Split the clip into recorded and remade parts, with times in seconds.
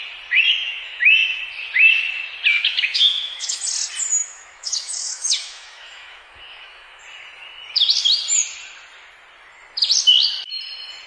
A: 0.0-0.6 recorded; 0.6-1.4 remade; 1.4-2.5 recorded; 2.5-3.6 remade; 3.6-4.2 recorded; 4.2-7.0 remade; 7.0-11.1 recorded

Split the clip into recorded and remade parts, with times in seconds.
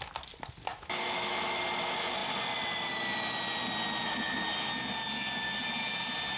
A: 0.0-0.7 recorded; 0.7-1.6 remade; 1.6-6.4 recorded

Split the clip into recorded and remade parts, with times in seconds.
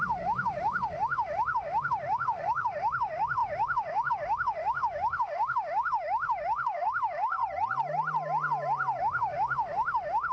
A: 0.0-7.4 remade; 7.4-9.0 recorded; 9.0-10.3 remade